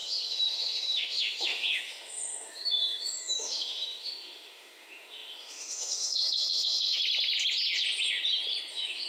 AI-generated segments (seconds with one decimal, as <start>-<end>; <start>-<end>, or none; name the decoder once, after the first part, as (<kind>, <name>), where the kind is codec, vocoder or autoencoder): 0.0-7.0 (autoencoder, DAC-VAE); 8.7-9.1